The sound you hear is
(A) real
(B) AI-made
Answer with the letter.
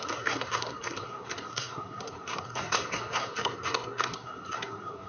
B